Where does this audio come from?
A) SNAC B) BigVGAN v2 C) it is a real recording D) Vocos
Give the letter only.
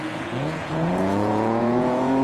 D